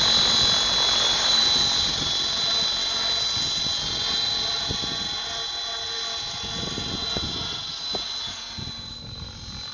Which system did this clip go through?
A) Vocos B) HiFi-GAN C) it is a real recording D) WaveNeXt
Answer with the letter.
C